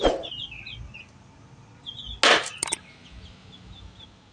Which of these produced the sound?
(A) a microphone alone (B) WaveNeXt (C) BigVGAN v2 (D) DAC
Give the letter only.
A